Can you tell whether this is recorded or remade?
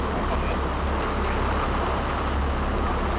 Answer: recorded